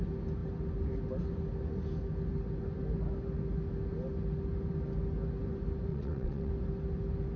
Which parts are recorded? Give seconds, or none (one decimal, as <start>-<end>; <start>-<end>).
0.0-5.9; 6.5-7.4